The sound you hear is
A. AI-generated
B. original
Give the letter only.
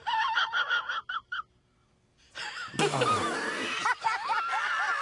B